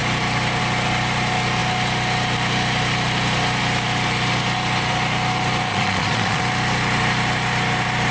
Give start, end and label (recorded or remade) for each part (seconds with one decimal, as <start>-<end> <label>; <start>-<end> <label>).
0.0-5.7 recorded; 5.7-6.4 remade; 6.4-8.1 recorded